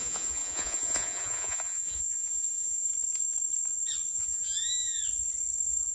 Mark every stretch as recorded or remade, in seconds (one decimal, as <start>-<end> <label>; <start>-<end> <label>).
0.0-2.9 remade; 2.9-4.1 recorded; 4.1-5.0 remade; 5.0-5.9 recorded